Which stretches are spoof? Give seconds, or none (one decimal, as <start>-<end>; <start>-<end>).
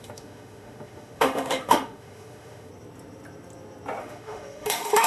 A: 0.0-2.7; 4.0-5.1